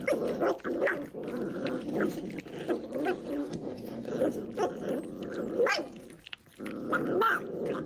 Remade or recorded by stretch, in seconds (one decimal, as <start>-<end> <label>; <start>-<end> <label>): 0.0-3.4 recorded; 3.4-4.1 remade; 4.1-7.9 recorded